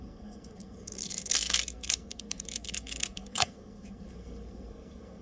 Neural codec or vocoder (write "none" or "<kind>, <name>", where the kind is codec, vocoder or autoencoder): codec, SNAC